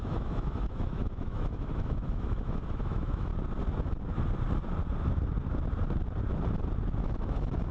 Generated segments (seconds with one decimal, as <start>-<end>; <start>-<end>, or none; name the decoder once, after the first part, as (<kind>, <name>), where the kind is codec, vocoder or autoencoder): 0.0-3.3 (autoencoder, DAC-VAE); 7.0-7.7